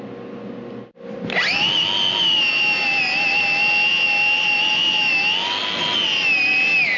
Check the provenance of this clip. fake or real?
real